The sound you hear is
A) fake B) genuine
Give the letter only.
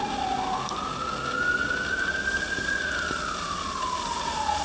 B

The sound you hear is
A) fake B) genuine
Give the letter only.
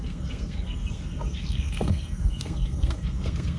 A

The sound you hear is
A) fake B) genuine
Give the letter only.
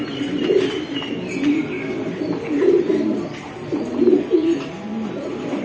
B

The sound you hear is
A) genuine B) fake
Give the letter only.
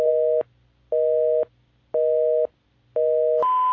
A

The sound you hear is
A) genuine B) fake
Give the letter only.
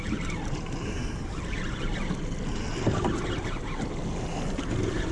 A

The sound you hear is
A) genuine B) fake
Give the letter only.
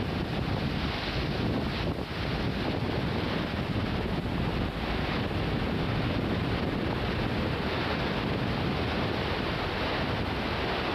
A